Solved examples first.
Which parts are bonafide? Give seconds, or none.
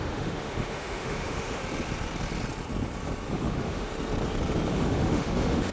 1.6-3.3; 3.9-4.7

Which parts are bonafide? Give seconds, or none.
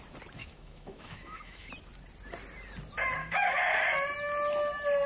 0.0-0.4; 1.7-3.2; 3.9-5.1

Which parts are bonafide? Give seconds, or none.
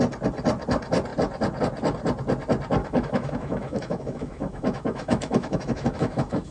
0.0-2.8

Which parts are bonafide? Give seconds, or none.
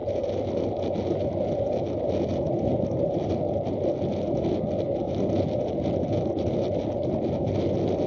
0.0-8.1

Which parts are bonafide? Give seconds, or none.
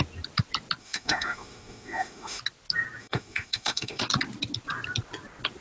0.0-0.8; 2.4-3.0; 4.0-5.6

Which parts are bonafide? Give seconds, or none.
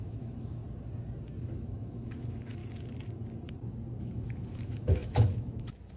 0.6-1.4; 2.6-4.0